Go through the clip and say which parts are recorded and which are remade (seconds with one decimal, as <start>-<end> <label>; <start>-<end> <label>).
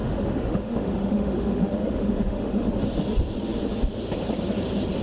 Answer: 0.0-2.7 remade; 2.7-5.0 recorded